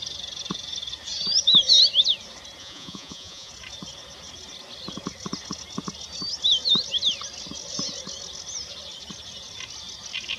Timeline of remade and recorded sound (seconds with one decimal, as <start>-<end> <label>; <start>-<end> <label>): 0.0-2.6 recorded; 2.6-3.5 remade; 3.5-10.4 recorded